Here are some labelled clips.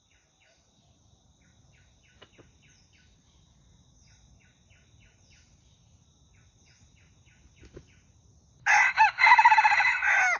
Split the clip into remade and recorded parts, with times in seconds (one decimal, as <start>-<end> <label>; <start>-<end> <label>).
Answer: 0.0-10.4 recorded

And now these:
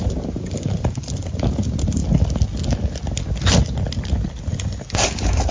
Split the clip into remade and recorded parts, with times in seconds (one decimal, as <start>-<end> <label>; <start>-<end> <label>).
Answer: 0.0-2.0 remade; 2.0-4.9 recorded; 4.9-5.5 remade

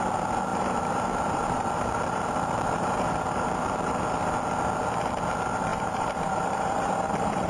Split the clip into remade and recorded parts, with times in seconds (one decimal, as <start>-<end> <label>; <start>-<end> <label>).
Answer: 0.0-0.5 recorded; 0.5-4.0 remade; 4.0-5.7 recorded; 5.7-7.5 remade

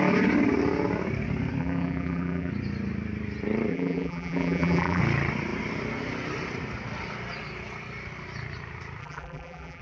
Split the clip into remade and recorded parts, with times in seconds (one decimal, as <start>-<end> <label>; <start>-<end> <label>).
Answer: 0.0-1.6 recorded; 1.6-2.5 remade; 2.5-3.7 recorded; 3.7-5.0 remade; 5.0-9.0 recorded; 9.0-9.8 remade

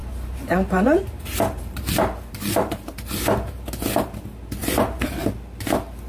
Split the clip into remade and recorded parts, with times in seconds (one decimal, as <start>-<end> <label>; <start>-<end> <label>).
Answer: 0.0-3.7 remade; 3.7-4.6 recorded; 4.6-5.2 remade; 5.2-6.1 recorded

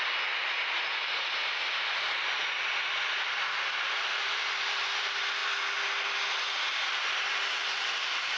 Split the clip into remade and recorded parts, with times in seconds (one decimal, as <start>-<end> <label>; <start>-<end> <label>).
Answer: 0.0-8.4 recorded